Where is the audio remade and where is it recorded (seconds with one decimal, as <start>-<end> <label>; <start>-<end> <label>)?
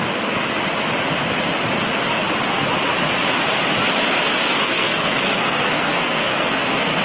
0.0-4.6 recorded; 4.6-7.0 remade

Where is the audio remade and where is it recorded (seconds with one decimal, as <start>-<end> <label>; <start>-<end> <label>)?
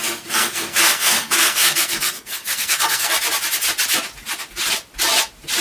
0.0-3.1 remade; 3.1-5.6 recorded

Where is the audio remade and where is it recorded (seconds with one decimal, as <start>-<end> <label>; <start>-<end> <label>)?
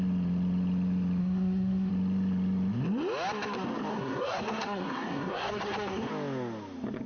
0.0-1.2 recorded; 1.2-1.9 remade; 1.9-3.9 recorded; 3.9-6.1 remade; 6.1-7.1 recorded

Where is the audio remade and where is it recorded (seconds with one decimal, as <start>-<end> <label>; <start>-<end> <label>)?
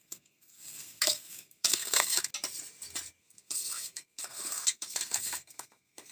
0.0-2.3 remade; 2.3-3.2 recorded; 3.2-6.1 remade